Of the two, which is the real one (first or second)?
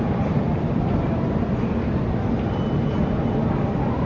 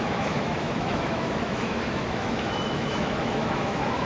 first